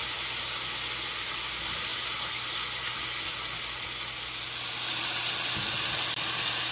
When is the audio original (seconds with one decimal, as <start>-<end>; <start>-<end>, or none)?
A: 0.0-6.7